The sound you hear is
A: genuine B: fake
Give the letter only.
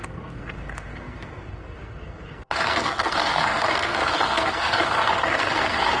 B